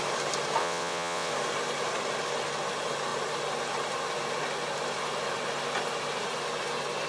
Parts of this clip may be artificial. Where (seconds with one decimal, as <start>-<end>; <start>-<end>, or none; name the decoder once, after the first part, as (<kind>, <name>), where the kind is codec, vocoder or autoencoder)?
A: 0.6-1.3 (vocoder, WaveNeXt)